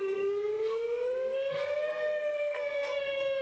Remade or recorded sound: remade